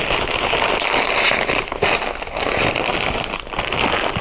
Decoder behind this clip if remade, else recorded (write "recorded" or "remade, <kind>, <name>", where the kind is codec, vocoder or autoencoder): recorded